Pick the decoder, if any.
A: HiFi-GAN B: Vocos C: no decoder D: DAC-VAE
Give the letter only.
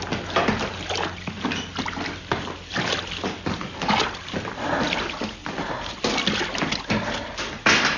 C